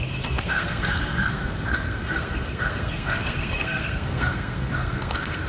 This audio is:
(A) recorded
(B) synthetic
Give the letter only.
B